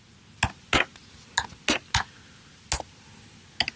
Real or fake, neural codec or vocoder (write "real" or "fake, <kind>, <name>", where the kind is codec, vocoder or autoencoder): real